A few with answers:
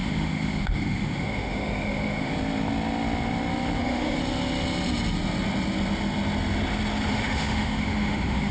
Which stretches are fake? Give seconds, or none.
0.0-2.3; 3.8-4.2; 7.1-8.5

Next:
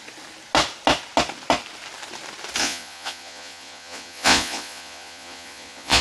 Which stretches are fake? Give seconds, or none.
2.6-6.0

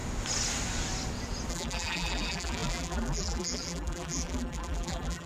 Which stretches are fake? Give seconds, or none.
1.5-5.3

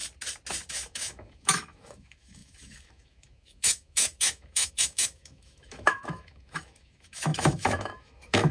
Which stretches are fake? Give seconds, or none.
0.7-8.5

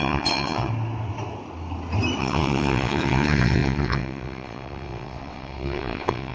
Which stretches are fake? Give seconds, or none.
0.0-0.7; 2.2-6.3

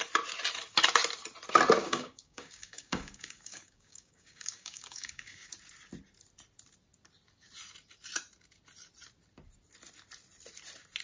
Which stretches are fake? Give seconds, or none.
1.8-5.5

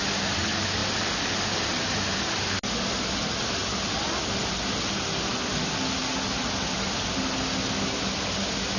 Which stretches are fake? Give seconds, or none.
none